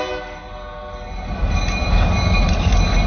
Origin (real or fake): real